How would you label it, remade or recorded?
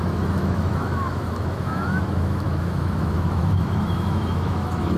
remade